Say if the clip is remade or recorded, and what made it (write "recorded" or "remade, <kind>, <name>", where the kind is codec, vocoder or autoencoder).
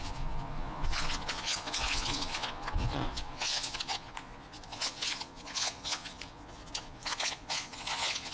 remade, vocoder, Vocos